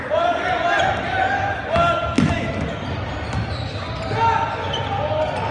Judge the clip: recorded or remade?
recorded